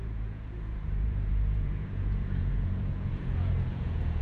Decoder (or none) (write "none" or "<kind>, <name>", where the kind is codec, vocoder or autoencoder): vocoder, Vocos